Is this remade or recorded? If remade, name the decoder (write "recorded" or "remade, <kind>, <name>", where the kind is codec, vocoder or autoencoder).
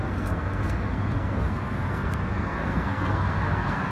remade, codec, SNAC